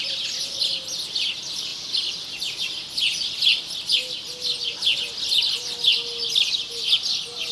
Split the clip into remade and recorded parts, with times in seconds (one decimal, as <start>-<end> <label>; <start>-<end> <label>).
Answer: 0.0-7.5 recorded